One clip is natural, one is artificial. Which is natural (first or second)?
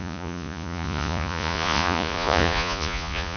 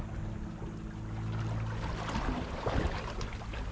second